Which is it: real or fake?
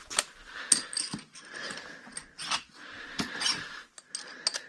real